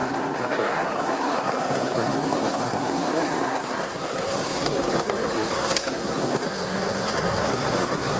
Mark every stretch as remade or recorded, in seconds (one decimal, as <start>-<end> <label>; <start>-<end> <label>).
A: 0.0-8.2 remade